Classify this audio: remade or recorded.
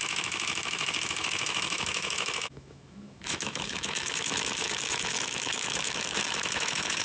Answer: remade